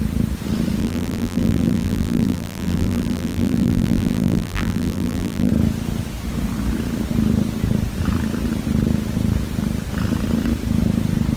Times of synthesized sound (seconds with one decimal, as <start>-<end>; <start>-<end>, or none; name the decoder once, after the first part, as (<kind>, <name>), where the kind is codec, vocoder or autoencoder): 0.8-5.5 (vocoder, BigVGAN v2)